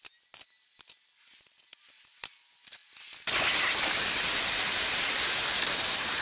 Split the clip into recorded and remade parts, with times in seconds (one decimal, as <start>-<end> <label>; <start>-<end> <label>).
0.0-6.2 recorded